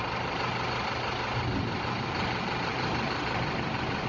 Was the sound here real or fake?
real